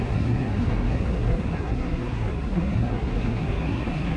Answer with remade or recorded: remade